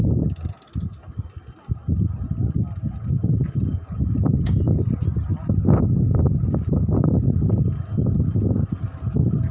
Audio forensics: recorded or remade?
recorded